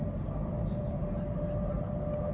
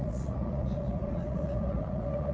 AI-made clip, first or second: second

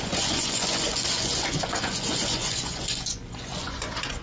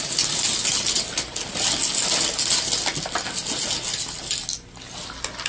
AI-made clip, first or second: first